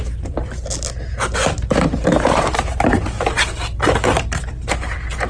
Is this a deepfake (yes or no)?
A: yes